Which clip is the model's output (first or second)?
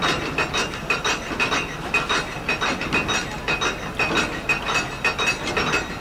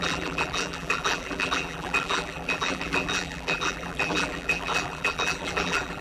second